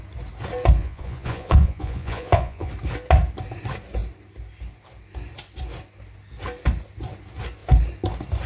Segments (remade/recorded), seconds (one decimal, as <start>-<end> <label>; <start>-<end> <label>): 0.0-0.8 recorded; 0.8-2.7 remade; 2.7-8.5 recorded